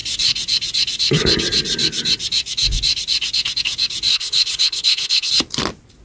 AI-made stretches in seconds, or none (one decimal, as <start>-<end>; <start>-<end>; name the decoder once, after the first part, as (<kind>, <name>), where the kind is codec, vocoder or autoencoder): 4.1-5.3 (codec, HILCodec)